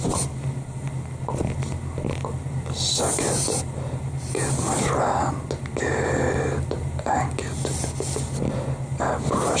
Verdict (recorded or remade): recorded